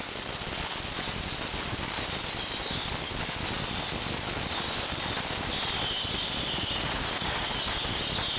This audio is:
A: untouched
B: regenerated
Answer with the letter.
A